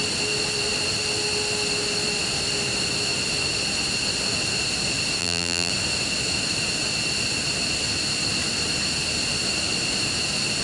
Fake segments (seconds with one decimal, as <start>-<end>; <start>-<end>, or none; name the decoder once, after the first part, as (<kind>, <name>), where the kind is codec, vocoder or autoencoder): 5.2-5.7 (vocoder, BigVGAN v2)